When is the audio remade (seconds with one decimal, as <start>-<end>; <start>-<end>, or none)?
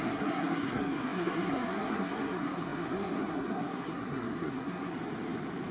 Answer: 0.0-4.9